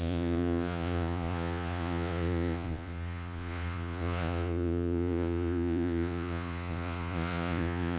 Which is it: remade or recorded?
remade